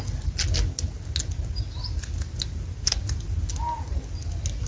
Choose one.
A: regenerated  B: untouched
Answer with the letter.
B